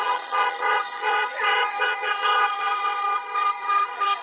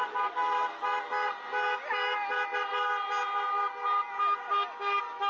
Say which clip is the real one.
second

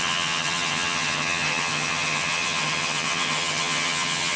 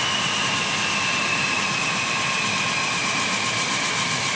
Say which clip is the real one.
second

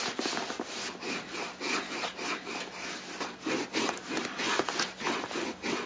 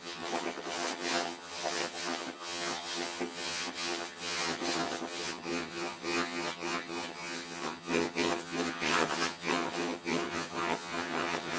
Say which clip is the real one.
first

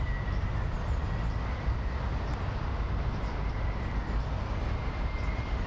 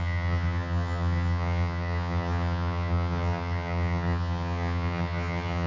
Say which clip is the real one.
first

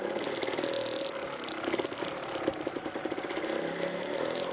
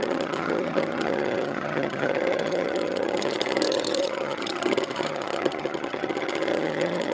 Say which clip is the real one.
first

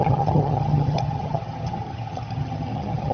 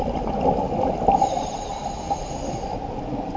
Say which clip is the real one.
second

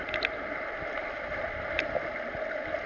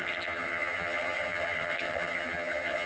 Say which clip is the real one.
first